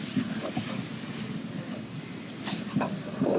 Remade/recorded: recorded